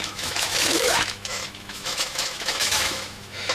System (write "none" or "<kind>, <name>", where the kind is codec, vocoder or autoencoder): autoencoder, DAC-VAE